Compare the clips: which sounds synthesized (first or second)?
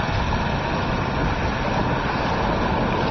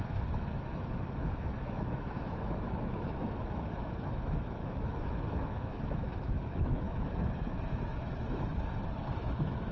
second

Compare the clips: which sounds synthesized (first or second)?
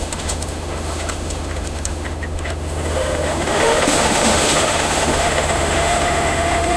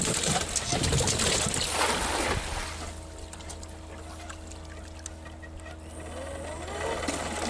first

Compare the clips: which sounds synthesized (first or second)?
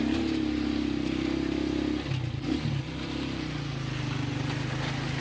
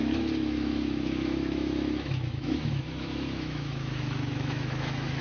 second